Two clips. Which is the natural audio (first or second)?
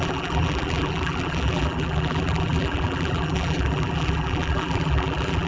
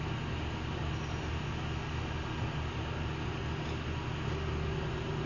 second